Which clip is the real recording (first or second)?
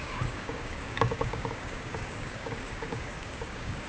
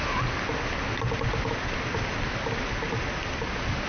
second